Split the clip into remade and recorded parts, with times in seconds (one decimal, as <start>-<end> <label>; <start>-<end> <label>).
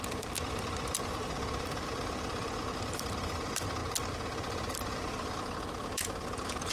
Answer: 0.0-3.8 remade; 3.8-4.5 recorded; 4.5-6.7 remade